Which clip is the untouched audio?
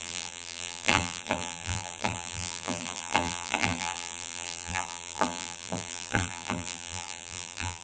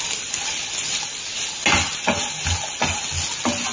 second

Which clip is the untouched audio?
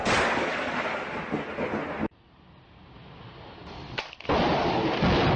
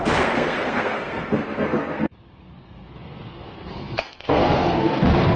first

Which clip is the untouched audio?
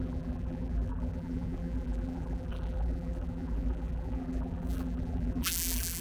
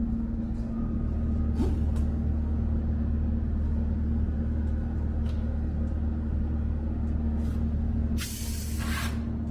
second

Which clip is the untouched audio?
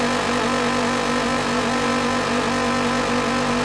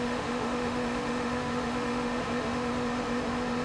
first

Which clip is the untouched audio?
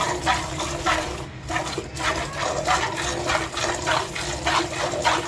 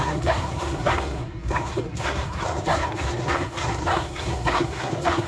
first